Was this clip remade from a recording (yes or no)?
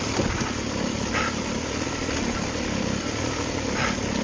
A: no